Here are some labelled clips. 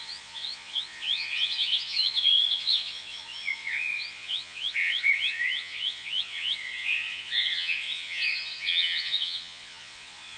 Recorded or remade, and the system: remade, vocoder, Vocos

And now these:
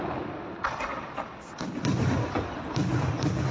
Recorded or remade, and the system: recorded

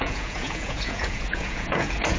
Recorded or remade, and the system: remade, vocoder, Vocos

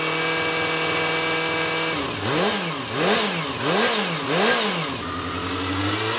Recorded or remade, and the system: recorded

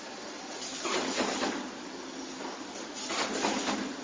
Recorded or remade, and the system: recorded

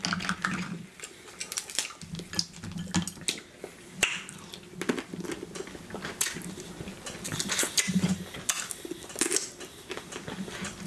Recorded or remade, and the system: recorded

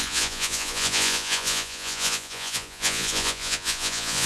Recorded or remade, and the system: remade, vocoder, Vocos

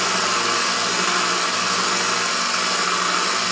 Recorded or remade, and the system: recorded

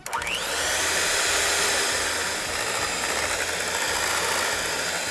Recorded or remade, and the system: recorded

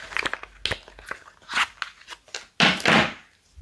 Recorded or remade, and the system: recorded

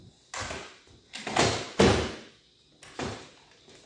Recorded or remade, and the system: recorded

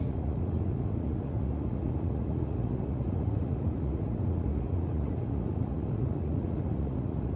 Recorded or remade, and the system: remade, vocoder, Vocos